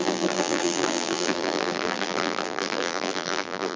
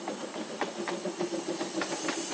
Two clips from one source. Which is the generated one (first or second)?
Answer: first